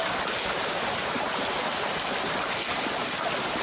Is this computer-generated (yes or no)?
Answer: no